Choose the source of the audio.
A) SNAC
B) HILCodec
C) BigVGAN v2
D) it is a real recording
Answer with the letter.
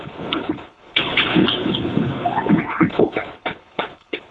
B